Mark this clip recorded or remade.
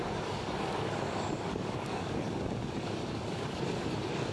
remade